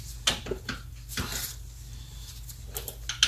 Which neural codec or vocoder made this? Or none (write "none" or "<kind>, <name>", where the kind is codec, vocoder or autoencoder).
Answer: none